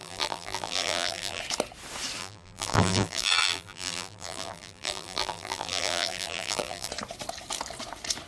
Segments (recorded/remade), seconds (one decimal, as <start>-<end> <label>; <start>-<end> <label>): 0.0-1.4 remade; 1.4-2.2 recorded; 2.2-6.9 remade; 6.9-8.3 recorded